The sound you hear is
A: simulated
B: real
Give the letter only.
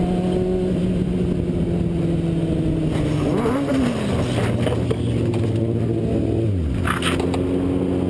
B